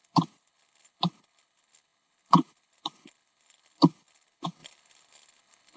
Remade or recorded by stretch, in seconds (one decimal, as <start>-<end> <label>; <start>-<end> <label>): 0.0-5.8 remade